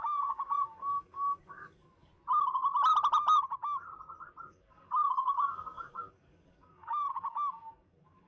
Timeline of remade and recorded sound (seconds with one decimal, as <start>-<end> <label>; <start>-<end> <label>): 0.0-2.1 remade; 2.1-4.5 recorded; 4.5-8.3 remade